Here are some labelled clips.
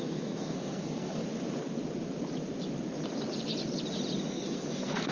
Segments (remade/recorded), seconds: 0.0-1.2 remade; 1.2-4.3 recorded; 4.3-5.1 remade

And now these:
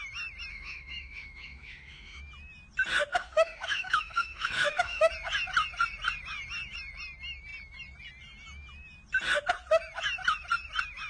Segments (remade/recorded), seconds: 0.0-0.5 recorded; 0.5-2.2 remade; 2.2-3.1 recorded; 3.1-5.1 remade; 5.1-11.1 recorded

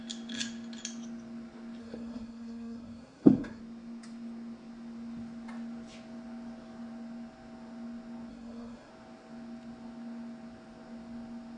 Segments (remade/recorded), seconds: 0.0-1.8 recorded; 1.8-3.6 remade; 3.6-8.3 recorded; 8.3-8.9 remade; 8.9-11.6 recorded